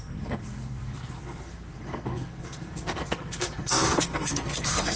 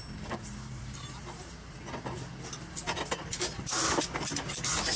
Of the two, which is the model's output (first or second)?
first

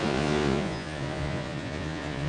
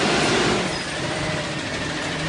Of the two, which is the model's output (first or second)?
first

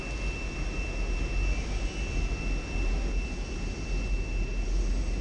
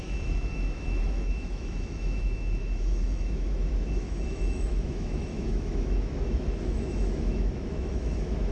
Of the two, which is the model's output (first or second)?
second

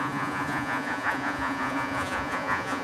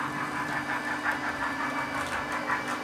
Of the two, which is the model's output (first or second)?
first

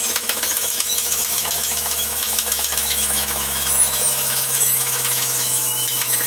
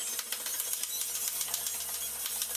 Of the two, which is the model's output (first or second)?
first